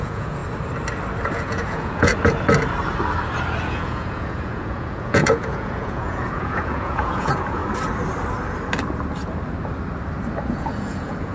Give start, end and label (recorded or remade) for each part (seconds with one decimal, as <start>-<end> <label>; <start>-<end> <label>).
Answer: 0.0-0.4 remade; 0.4-1.3 recorded; 1.3-2.1 remade; 2.1-3.6 recorded; 3.6-7.6 remade; 7.6-10.5 recorded; 10.5-11.3 remade